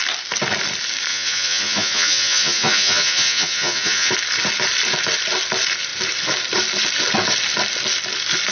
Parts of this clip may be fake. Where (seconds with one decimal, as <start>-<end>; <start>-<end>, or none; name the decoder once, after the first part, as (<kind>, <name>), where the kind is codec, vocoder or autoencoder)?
1.1-4.1 (vocoder, Vocos)